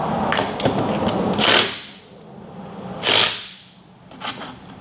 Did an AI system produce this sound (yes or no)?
no